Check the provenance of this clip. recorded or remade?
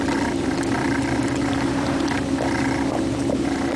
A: remade